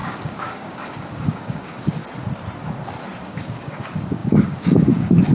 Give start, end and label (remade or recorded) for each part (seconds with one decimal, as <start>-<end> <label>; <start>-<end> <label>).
0.0-2.0 remade; 2.0-3.3 recorded; 3.3-5.3 remade